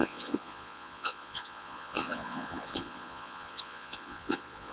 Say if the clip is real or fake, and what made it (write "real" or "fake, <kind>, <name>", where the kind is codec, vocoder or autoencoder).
fake, vocoder, Vocos